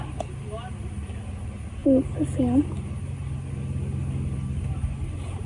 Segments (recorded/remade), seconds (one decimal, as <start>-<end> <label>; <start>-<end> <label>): 0.0-5.5 recorded